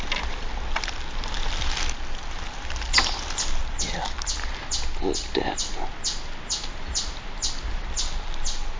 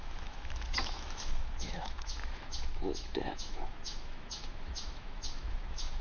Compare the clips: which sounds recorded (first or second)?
first